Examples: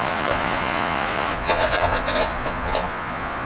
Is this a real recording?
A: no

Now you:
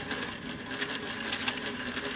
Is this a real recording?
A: yes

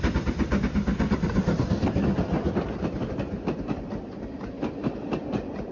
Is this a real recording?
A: yes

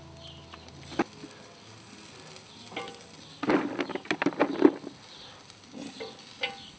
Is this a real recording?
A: yes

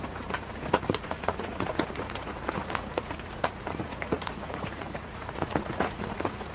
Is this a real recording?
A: no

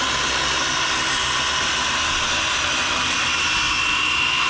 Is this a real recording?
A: yes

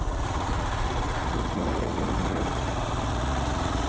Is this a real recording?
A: no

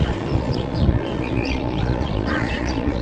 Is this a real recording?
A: no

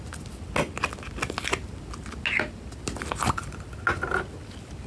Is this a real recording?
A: yes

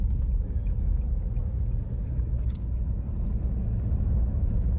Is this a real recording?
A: yes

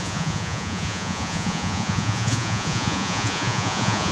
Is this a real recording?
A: no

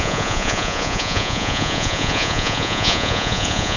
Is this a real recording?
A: no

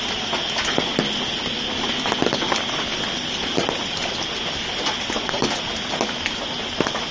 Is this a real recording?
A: yes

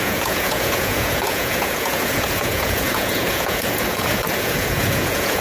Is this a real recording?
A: no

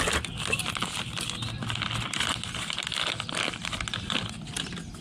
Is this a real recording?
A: yes